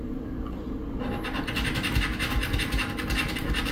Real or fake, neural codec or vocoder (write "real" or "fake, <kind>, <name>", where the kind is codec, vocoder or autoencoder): real